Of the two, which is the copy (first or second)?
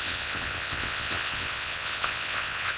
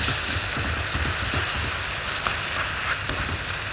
first